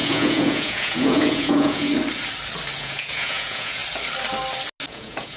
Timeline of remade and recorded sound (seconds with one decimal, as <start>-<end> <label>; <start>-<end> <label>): 0.0-1.9 remade; 1.9-2.8 recorded; 2.8-3.8 remade; 3.8-4.9 recorded; 4.9-5.4 remade

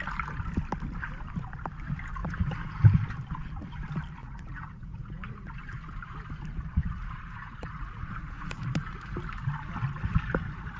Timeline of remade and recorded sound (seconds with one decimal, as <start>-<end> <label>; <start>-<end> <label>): 0.0-2.2 recorded; 2.2-2.8 remade; 2.8-4.2 recorded; 4.2-5.5 remade; 5.5-6.8 recorded; 6.8-9.2 remade; 9.2-10.8 recorded

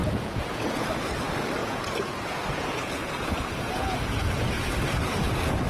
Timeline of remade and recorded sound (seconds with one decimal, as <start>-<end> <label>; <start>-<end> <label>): 0.0-0.9 remade; 0.9-1.6 recorded; 1.6-4.7 remade; 4.7-5.7 recorded

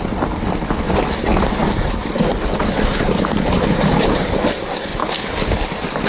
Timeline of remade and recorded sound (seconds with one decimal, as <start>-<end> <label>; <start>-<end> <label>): 0.0-6.1 recorded

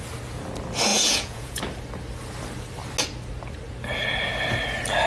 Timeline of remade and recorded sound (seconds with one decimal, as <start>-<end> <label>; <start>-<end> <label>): 0.0-0.9 recorded; 0.9-1.6 remade; 1.6-5.1 recorded

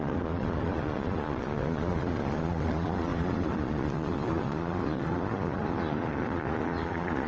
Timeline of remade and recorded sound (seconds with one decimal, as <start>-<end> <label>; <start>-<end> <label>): 0.0-7.3 remade

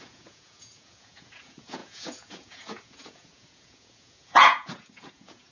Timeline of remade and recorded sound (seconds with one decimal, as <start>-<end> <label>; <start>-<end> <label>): 0.0-5.5 remade

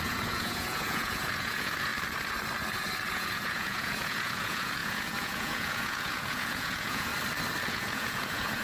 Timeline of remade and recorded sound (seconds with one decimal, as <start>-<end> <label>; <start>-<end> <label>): 0.0-1.9 remade; 1.9-3.1 recorded; 3.1-7.1 remade; 7.1-7.7 recorded; 7.7-8.6 remade